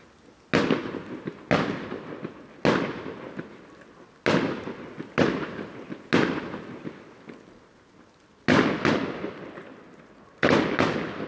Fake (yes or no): no